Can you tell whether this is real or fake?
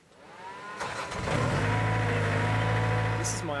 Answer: real